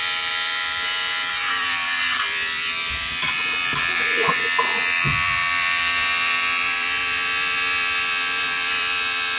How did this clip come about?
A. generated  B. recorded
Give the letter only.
A